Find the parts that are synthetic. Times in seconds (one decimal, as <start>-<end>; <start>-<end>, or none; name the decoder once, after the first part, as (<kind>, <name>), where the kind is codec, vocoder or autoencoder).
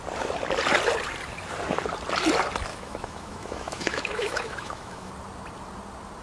2.7-5.1 (autoencoder, DAC-VAE)